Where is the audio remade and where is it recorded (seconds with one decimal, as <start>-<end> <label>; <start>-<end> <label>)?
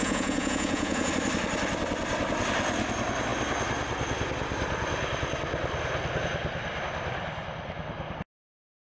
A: 0.0-1.1 remade; 1.1-8.9 recorded